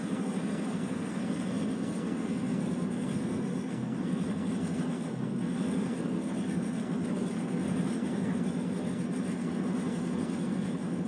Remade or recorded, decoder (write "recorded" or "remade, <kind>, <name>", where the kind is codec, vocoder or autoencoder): remade, codec, SNAC